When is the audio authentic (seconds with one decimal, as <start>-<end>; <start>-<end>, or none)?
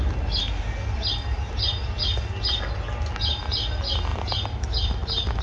0.0-5.4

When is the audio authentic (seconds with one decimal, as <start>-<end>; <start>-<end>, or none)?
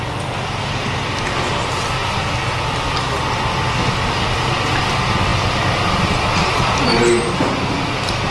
0.0-8.3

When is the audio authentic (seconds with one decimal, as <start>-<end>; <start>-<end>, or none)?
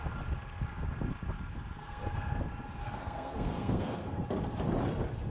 0.0-1.8; 2.4-2.8; 4.2-5.3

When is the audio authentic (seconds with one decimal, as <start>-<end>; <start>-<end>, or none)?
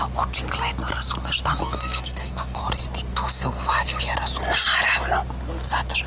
0.0-1.6; 2.6-3.1; 4.0-6.1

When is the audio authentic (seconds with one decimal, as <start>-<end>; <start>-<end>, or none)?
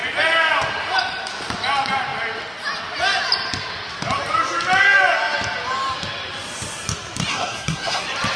0.0-7.3; 8.0-8.4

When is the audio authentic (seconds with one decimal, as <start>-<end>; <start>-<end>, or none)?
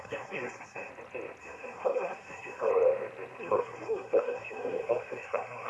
0.9-1.4; 2.7-3.4